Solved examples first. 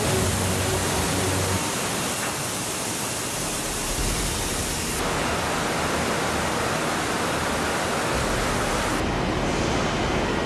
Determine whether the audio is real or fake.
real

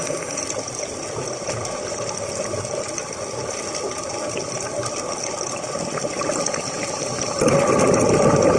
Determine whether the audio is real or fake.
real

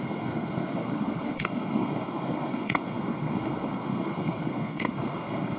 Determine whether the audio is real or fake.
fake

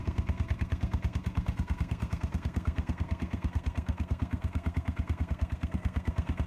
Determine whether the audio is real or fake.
fake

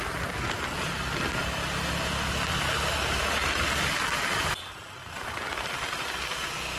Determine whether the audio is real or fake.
real